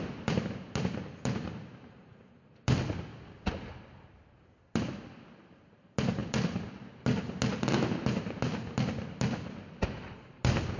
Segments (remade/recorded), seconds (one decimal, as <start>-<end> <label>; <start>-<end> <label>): 0.0-6.2 recorded; 6.2-6.9 remade; 6.9-10.8 recorded